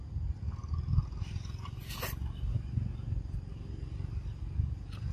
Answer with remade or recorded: recorded